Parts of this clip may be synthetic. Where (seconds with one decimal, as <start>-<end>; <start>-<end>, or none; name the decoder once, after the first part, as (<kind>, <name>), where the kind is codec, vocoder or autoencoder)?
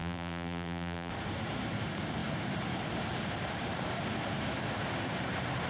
0.0-1.1 (vocoder, BigVGAN v2)